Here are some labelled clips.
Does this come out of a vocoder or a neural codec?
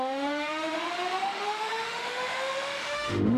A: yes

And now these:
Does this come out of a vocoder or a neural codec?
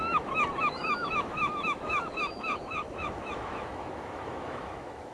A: yes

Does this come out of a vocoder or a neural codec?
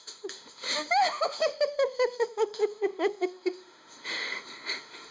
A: yes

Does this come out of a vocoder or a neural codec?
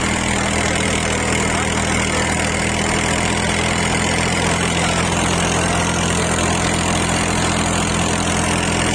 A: no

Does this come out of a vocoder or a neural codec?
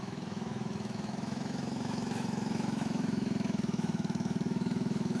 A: yes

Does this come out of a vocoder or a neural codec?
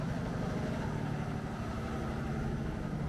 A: no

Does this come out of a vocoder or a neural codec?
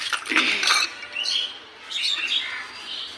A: no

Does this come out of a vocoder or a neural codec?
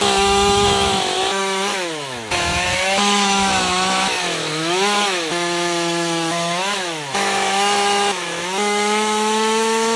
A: yes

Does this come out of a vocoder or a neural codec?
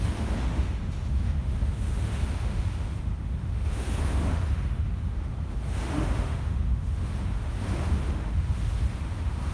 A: yes